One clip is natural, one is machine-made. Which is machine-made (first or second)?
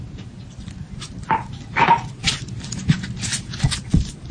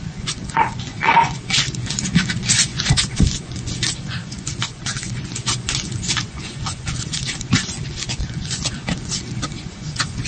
second